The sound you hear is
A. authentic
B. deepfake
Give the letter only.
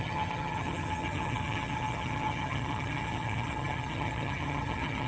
B